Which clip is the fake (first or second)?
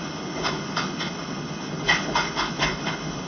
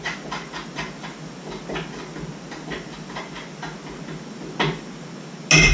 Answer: first